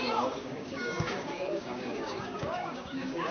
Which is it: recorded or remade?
remade